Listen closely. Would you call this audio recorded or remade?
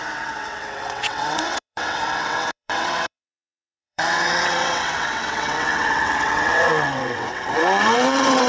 remade